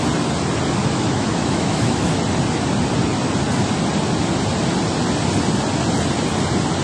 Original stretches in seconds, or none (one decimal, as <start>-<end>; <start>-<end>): 0.0-0.8; 2.2-6.8